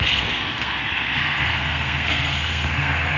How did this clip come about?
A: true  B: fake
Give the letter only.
B